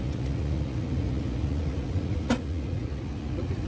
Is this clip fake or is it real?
fake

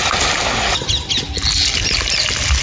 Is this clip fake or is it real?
real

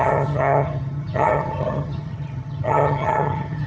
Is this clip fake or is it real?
fake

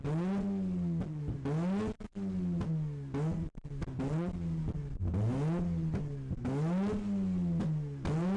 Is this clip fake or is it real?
real